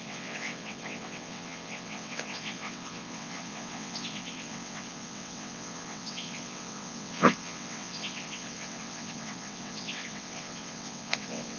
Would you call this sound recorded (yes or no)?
no